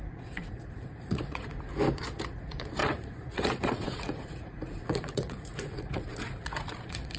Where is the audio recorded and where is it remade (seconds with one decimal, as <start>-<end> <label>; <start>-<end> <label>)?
0.0-1.7 remade; 1.7-2.3 recorded; 2.3-7.2 remade